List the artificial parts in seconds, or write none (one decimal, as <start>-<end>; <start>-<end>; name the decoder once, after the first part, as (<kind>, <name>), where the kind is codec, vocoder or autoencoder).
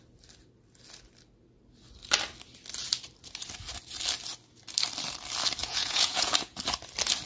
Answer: 5.6-6.6 (vocoder, Vocos)